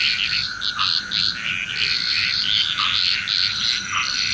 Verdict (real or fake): real